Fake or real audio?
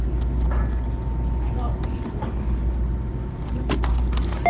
real